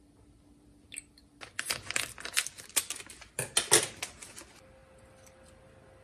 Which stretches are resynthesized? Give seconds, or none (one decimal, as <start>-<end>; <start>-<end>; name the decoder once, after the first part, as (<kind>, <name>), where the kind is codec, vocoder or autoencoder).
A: none